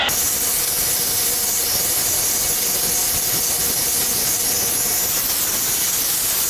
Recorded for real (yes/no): yes